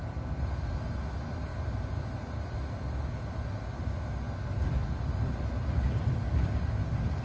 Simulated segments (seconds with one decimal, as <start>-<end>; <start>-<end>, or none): none